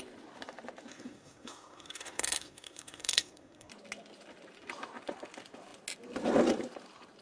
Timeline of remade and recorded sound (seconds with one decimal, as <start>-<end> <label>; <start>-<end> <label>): 0.0-0.9 recorded; 0.9-3.7 remade; 3.7-7.2 recorded